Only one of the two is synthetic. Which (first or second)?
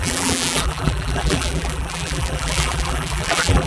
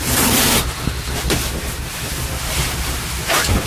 first